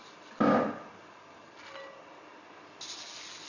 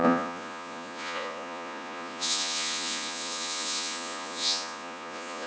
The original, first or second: first